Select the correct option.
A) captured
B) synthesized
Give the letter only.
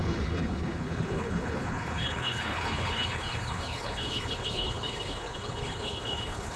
B